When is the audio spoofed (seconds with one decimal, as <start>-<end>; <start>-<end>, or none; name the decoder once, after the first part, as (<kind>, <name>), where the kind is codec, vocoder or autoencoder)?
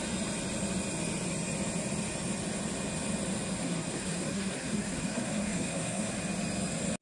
3.6-6.1 (codec, SNAC)